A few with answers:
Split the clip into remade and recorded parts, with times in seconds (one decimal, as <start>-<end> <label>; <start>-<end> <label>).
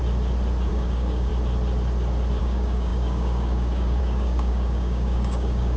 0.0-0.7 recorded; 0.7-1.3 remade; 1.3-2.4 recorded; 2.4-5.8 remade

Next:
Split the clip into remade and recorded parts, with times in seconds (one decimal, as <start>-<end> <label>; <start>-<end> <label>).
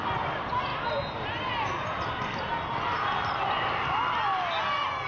0.0-5.1 recorded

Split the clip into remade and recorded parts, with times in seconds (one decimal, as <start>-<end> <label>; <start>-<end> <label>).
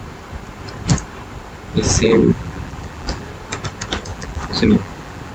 0.0-1.9 recorded; 1.9-3.3 remade; 3.3-4.1 recorded; 4.1-5.3 remade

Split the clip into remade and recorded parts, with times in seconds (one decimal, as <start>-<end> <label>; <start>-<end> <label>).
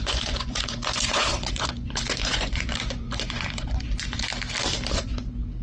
0.0-4.3 remade; 4.3-4.9 recorded; 4.9-5.6 remade